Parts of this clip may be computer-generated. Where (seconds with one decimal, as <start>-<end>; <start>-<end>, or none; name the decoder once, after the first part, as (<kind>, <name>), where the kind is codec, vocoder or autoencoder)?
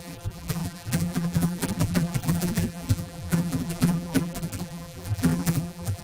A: 0.0-6.0 (vocoder, BigVGAN v2)